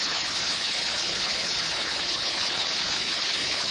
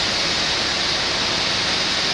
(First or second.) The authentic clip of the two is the second